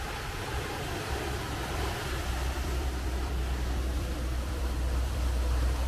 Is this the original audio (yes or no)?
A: no